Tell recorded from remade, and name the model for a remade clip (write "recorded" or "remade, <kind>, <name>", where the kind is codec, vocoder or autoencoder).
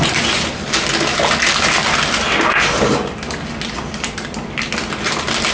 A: recorded